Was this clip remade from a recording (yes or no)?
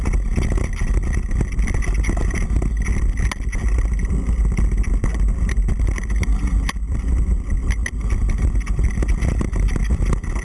no